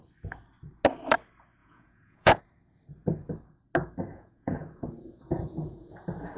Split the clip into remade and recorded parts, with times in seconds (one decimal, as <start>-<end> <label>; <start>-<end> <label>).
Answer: 0.0-1.6 recorded; 1.6-2.4 remade; 2.4-4.1 recorded; 4.1-6.0 remade; 6.0-6.4 recorded